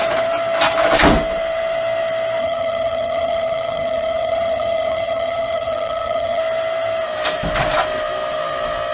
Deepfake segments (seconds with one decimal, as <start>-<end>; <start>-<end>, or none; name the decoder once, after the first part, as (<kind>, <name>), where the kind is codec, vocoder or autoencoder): 2.4-6.4 (vocoder, HiFi-GAN)